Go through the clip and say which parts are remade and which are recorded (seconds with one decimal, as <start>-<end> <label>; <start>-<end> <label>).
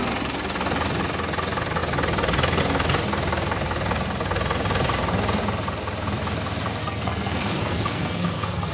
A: 0.0-6.8 recorded; 6.8-8.7 remade